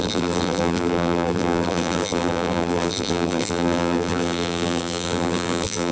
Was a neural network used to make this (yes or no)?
yes